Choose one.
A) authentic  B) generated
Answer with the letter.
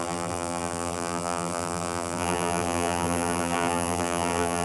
B